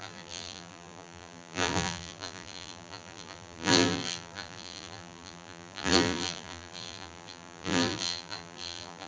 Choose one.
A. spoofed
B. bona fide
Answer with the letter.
A